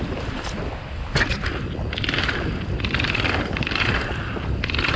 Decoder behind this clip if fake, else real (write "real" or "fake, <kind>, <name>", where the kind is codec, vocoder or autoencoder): fake, vocoder, BigVGAN v2